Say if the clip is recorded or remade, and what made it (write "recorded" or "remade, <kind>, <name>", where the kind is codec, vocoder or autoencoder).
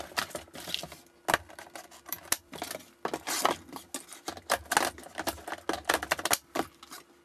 recorded